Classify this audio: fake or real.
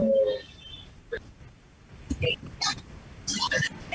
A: real